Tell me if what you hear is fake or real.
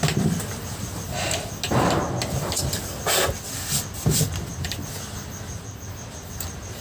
real